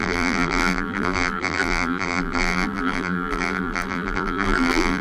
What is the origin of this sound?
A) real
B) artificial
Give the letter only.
B